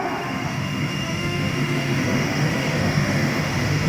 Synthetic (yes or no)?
yes